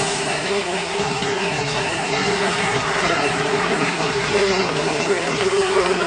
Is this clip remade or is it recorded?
remade